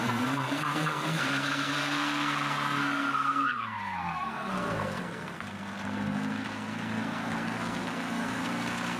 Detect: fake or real fake